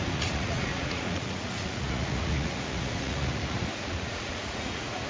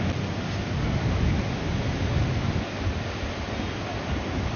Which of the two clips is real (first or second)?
second